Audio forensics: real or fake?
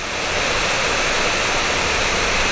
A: real